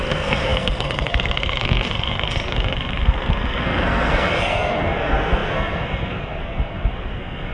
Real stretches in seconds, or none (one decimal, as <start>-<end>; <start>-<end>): none